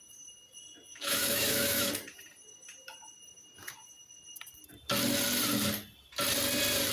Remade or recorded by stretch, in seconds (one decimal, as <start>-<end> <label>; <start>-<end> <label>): 0.0-0.9 recorded; 0.9-1.9 remade; 1.9-6.9 recorded